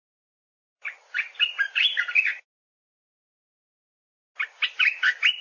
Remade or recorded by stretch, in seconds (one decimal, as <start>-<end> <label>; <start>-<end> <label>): 0.0-5.4 recorded